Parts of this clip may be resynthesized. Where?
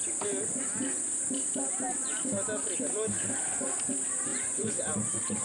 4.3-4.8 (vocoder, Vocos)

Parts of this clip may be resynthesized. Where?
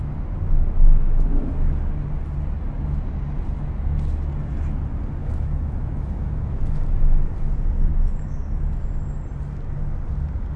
5.2-6.6 (autoencoder, DAC-VAE); 7.9-8.6